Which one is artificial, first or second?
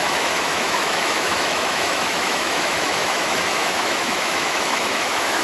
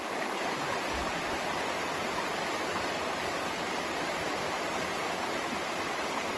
first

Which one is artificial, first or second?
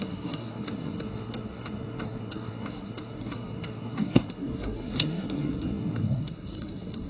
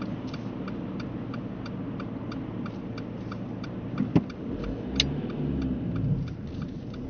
first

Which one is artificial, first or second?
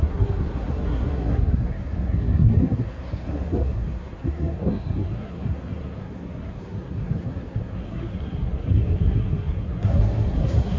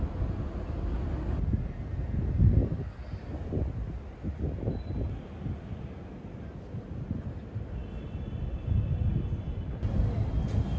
first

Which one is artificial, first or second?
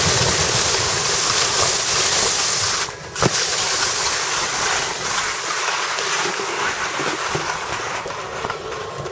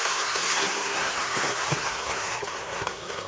second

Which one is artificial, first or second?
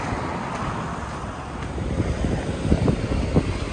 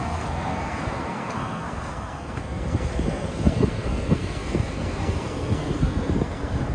second